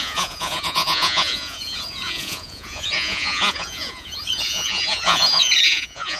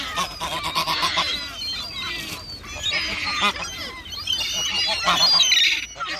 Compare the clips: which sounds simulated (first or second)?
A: first